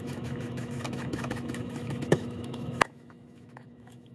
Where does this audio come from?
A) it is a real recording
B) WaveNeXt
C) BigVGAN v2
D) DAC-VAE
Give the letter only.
D